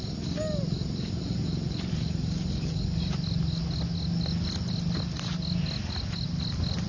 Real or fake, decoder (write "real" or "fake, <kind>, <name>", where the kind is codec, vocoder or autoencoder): real